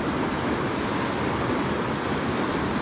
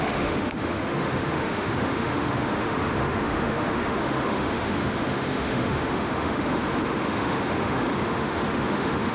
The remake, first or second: second